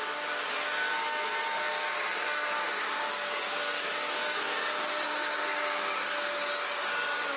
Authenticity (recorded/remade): remade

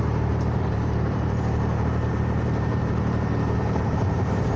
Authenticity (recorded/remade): remade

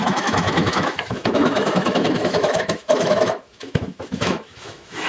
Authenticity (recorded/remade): remade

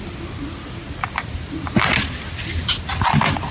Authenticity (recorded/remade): recorded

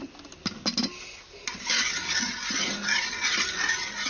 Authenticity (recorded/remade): recorded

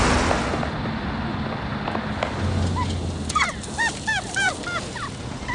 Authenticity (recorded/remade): recorded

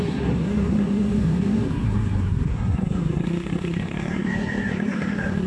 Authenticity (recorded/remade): remade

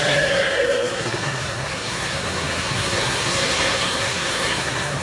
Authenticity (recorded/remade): remade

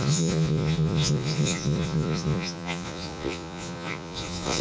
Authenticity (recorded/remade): remade